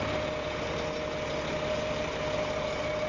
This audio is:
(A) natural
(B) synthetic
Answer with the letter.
A